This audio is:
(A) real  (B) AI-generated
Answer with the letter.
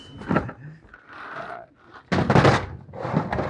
A